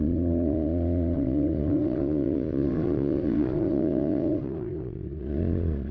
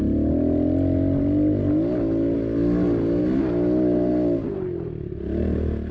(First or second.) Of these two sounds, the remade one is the first